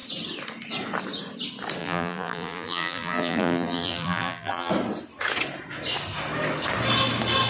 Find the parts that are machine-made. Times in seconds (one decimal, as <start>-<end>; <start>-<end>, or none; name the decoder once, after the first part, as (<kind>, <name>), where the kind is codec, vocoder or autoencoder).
1.8-4.7 (vocoder, BigVGAN v2)